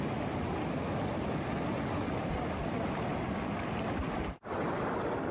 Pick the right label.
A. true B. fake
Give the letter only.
A